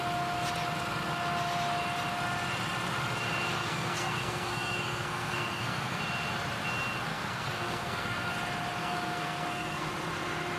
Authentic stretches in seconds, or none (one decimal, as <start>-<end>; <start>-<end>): 0.0-3.6; 6.0-7.1; 8.3-8.8; 9.9-10.6